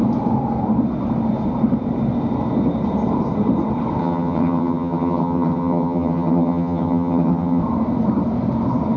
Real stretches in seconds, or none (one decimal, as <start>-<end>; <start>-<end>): 0.0-4.0; 7.6-9.0